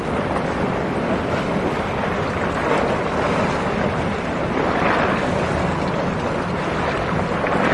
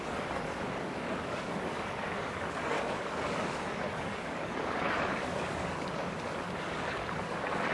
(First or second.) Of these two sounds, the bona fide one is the first